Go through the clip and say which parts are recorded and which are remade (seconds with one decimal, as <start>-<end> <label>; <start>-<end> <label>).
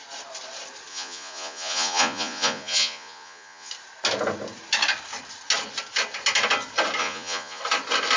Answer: 0.0-0.9 recorded; 0.9-3.7 remade; 3.7-7.0 recorded; 7.0-7.6 remade; 7.6-8.2 recorded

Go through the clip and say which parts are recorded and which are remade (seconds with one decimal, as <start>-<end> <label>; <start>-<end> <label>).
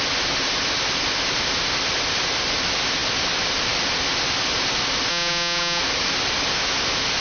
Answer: 0.0-5.1 recorded; 5.1-5.8 remade; 5.8-7.2 recorded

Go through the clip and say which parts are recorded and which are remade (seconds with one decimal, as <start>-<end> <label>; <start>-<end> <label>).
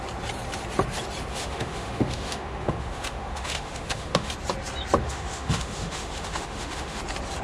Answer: 0.0-1.3 recorded; 1.3-4.3 remade; 4.3-5.0 recorded; 5.0-7.0 remade; 7.0-7.4 recorded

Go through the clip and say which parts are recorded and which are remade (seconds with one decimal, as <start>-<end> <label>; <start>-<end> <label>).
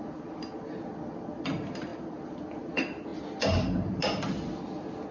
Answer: 0.0-5.1 recorded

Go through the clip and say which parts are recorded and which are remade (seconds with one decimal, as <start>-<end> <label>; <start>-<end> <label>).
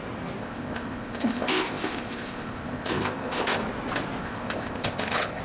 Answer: 0.0-0.4 recorded; 0.4-3.6 remade; 3.6-4.2 recorded; 4.2-5.4 remade